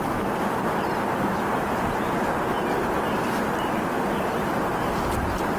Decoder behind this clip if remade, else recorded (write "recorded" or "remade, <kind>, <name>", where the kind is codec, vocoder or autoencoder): remade, vocoder, BigVGAN v2